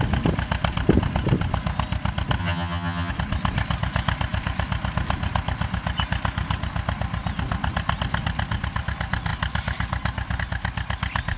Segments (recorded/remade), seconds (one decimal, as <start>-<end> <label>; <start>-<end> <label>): 0.0-2.4 recorded; 2.4-3.1 remade; 3.1-11.4 recorded